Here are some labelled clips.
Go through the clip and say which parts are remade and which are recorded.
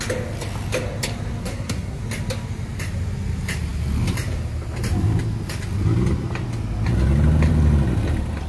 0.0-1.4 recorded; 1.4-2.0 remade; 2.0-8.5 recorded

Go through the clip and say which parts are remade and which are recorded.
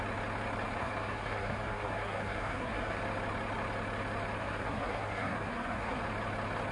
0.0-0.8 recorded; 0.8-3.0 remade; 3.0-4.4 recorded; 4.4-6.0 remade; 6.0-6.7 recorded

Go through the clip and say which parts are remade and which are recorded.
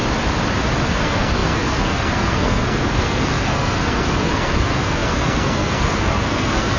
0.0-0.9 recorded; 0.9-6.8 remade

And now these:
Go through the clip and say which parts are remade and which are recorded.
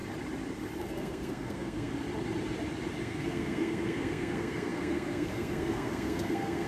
0.0-0.8 recorded; 0.8-1.9 remade; 1.9-3.0 recorded; 3.0-6.7 remade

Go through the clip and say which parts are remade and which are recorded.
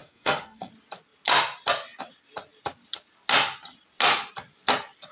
0.0-0.7 remade; 0.7-5.1 recorded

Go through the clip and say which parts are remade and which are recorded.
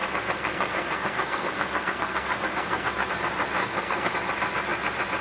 0.0-3.1 remade; 3.1-3.6 recorded; 3.6-4.1 remade; 4.1-5.2 recorded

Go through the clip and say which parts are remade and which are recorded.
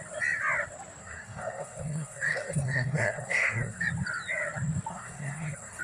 0.0-1.0 recorded; 1.0-3.8 remade; 3.8-4.9 recorded; 4.9-5.8 remade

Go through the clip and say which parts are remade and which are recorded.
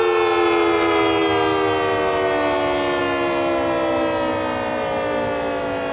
0.0-5.9 recorded